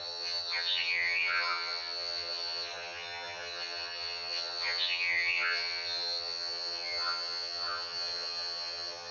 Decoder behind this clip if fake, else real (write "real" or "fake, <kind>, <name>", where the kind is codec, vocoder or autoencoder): fake, vocoder, HiFi-GAN